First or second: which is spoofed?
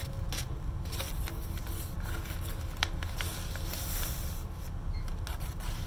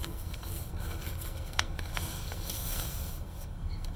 second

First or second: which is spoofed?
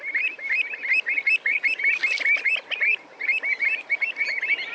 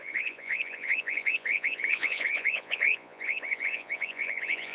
second